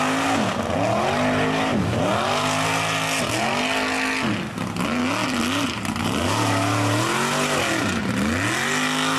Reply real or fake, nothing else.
real